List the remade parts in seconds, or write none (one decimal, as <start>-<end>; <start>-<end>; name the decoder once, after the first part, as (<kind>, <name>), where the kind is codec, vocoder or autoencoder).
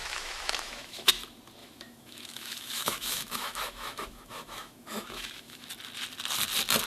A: 0.0-1.1 (autoencoder, DAC-VAE); 1.6-5.7